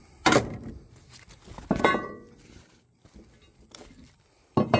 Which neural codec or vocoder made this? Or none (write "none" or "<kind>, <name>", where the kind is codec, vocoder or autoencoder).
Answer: none